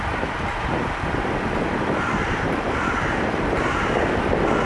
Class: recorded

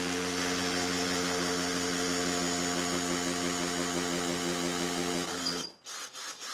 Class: recorded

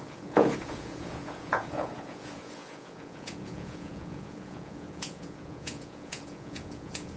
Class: remade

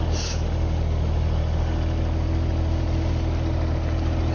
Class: recorded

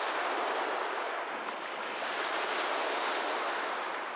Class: recorded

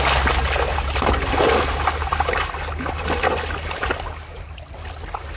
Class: recorded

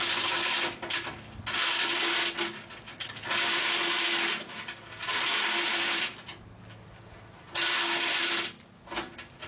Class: recorded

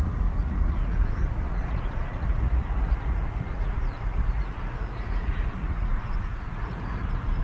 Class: remade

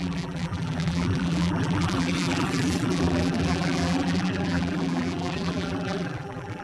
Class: remade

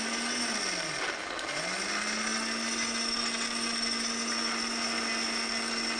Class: recorded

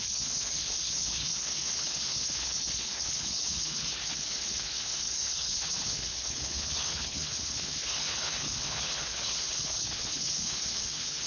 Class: remade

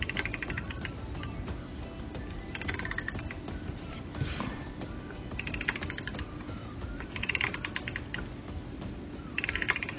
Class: recorded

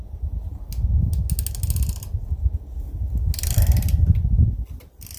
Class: recorded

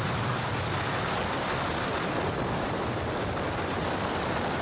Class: recorded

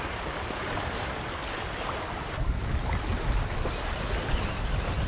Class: recorded